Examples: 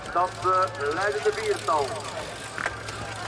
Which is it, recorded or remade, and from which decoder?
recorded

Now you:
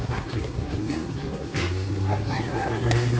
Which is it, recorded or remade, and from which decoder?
remade, codec, SNAC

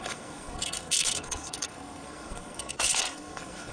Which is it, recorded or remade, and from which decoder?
remade, codec, SNAC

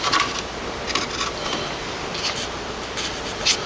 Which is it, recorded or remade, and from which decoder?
recorded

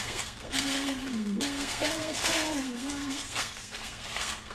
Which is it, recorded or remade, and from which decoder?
remade, codec, SNAC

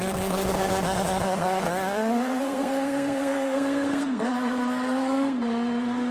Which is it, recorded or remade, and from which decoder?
remade, codec, SNAC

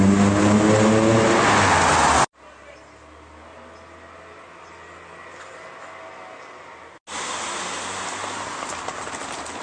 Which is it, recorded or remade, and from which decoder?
recorded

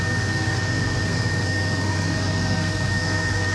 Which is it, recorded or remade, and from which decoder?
remade, codec, SNAC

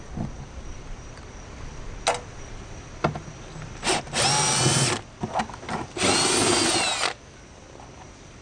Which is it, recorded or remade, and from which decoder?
recorded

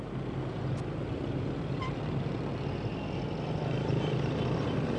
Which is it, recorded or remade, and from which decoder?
recorded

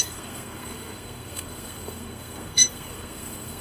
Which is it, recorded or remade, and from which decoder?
remade, codec, SNAC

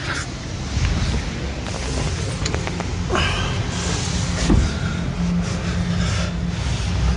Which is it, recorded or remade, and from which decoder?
recorded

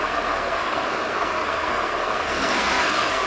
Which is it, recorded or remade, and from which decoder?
remade, codec, SNAC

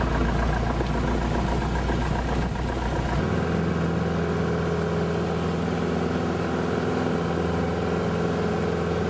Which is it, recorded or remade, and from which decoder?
recorded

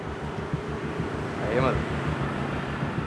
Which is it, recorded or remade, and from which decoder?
recorded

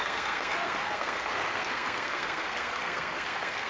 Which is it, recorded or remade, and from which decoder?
remade, codec, SNAC